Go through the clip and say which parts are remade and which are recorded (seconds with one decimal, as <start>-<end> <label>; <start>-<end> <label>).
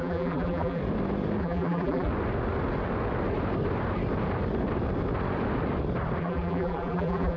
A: 0.0-0.8 remade; 0.8-1.4 recorded; 1.4-2.1 remade; 2.1-6.2 recorded; 6.2-7.4 remade